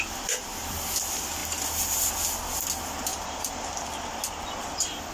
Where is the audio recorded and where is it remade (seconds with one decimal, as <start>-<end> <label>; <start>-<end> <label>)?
0.0-3.1 recorded; 3.1-3.6 remade; 3.6-5.1 recorded